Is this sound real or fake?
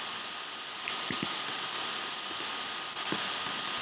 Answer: real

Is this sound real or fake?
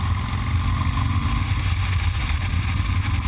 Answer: real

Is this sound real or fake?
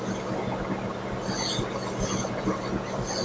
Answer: real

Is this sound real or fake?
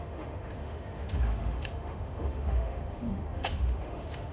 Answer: fake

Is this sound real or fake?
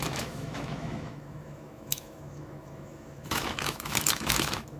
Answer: fake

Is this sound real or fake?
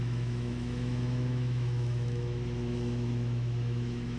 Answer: fake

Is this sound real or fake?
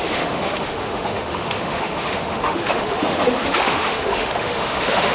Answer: fake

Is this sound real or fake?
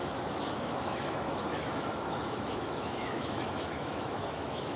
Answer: fake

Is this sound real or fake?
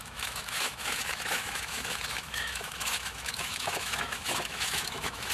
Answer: fake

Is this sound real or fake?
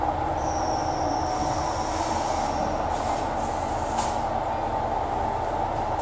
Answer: real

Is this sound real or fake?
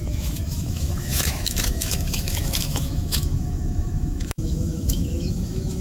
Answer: fake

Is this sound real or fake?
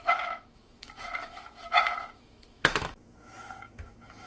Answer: fake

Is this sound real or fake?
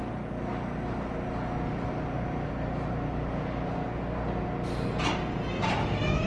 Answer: real